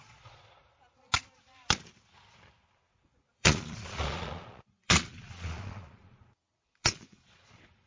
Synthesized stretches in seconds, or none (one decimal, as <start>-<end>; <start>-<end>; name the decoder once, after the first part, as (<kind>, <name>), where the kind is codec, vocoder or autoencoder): 0.0-0.6 (vocoder, Vocos); 2.8-7.9